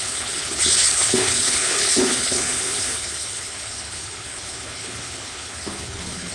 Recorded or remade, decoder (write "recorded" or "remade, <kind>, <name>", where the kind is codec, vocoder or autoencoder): remade, codec, HILCodec